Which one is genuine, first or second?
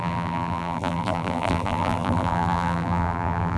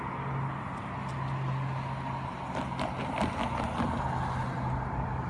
second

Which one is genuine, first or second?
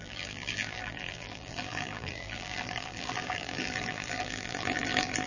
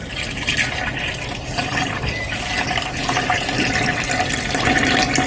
second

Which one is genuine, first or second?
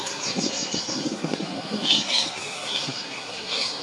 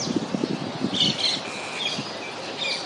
second